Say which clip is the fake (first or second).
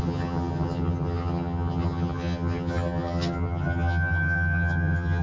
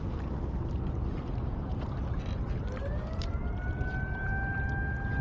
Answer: first